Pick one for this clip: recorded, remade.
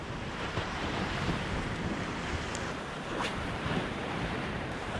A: remade